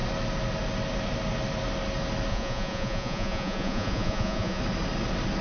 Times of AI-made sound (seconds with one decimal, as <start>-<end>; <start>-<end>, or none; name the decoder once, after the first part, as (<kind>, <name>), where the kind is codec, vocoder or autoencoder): 2.3-4.6 (vocoder, Vocos)